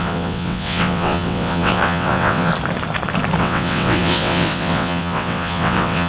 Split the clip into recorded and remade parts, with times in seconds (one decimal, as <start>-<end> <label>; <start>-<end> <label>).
0.0-2.5 remade; 2.5-3.4 recorded; 3.4-6.1 remade